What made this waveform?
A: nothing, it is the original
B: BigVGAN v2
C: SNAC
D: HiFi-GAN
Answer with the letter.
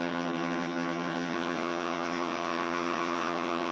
D